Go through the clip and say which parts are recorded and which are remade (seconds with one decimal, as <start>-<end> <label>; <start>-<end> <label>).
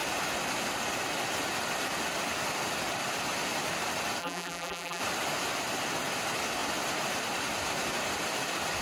0.0-4.2 recorded; 4.2-5.0 remade; 5.0-8.8 recorded